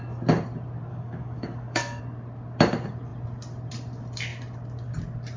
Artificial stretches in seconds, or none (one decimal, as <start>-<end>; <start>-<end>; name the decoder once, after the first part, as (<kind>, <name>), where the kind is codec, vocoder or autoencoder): 0.9-2.0 (codec, DAC)